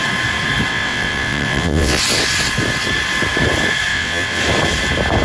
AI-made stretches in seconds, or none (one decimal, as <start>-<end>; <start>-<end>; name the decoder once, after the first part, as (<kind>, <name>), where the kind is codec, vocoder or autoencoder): 0.7-2.0 (vocoder, WaveNeXt); 3.9-4.4